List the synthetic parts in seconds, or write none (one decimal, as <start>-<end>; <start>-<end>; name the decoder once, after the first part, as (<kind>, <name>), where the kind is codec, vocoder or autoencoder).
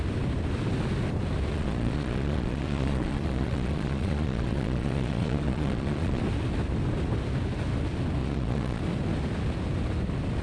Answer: 1.5-6.2 (vocoder, Vocos); 8.2-8.8